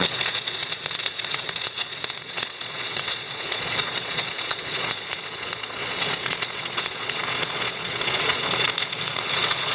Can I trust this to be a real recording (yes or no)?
no